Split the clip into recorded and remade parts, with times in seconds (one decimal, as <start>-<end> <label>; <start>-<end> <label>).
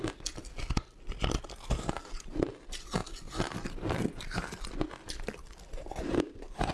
0.0-5.8 recorded; 5.8-6.7 remade